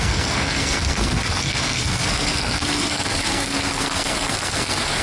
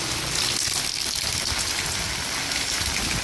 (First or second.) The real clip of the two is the second